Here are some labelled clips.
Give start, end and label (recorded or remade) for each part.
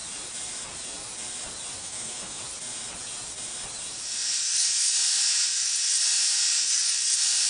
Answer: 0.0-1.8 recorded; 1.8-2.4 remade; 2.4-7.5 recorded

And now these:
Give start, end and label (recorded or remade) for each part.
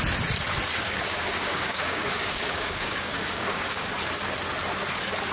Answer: 0.0-0.7 recorded; 0.7-3.9 remade; 3.9-5.3 recorded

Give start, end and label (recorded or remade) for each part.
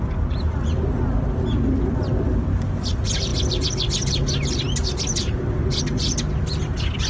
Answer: 0.0-7.1 recorded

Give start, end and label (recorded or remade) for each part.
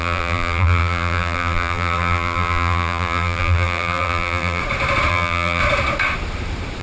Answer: 0.0-4.6 remade; 4.6-5.1 recorded; 5.1-5.6 remade; 5.6-6.8 recorded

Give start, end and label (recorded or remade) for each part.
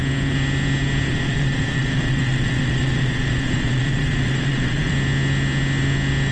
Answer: 0.0-1.1 recorded; 1.1-4.9 remade; 4.9-6.3 recorded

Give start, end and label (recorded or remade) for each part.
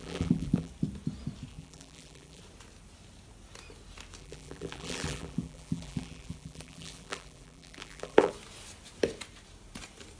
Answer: 0.0-0.7 remade; 0.7-1.5 recorded; 1.5-2.4 remade; 2.4-4.2 recorded; 4.2-8.3 remade; 8.3-10.2 recorded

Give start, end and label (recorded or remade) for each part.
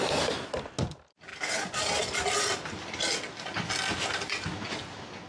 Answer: 0.0-5.3 recorded